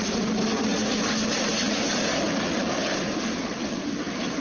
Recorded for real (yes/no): yes